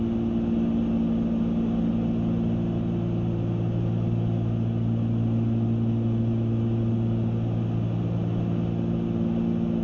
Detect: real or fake real